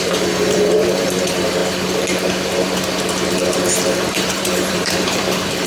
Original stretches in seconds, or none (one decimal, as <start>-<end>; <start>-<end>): 1.6-3.9